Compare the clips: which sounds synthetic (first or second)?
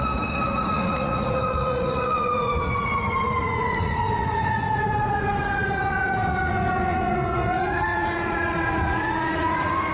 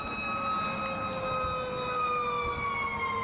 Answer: first